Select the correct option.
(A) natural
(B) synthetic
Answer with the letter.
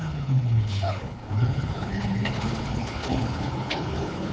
B